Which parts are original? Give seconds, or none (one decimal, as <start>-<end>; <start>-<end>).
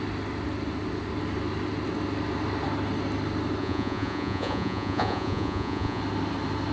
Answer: 0.0-3.6; 6.0-6.7